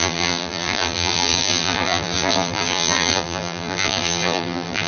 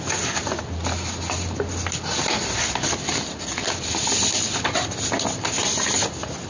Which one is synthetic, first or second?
first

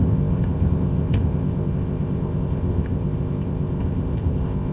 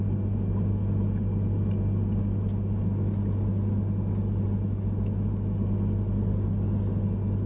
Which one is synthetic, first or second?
first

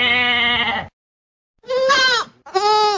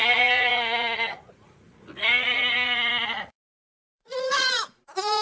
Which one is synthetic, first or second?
second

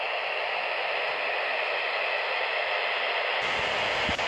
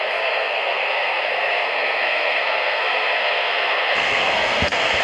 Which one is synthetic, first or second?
second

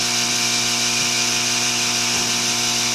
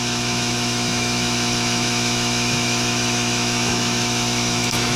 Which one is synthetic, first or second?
second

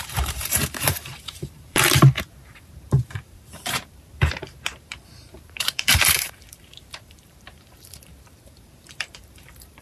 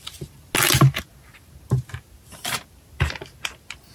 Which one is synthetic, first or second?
first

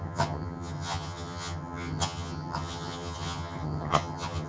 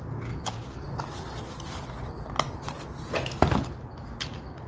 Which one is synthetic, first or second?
first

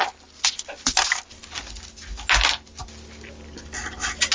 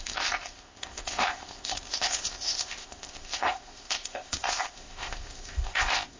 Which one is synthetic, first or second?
second